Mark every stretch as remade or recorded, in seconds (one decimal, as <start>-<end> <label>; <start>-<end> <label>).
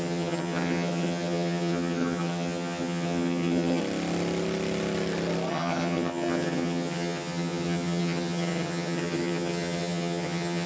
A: 0.0-3.8 remade; 3.8-5.5 recorded; 5.5-10.7 remade